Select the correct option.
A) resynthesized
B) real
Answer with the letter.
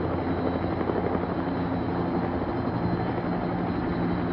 B